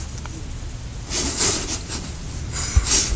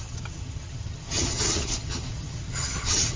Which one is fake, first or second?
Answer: second